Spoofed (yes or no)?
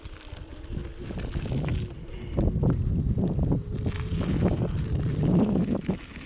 no